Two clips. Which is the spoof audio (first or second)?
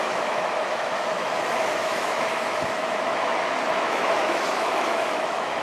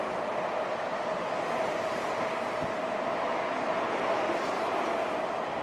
first